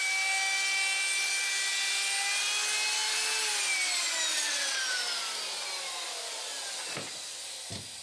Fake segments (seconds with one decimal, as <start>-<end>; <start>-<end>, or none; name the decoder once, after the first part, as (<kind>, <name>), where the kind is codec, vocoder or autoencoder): 4.3-4.8 (vocoder, WaveNeXt)